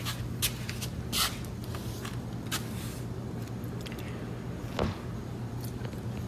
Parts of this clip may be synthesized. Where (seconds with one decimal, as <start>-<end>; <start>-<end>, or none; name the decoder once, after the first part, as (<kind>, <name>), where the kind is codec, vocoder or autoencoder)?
none